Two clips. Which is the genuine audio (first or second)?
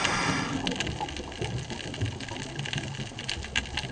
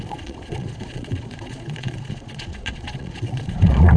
first